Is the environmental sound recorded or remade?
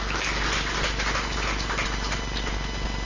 recorded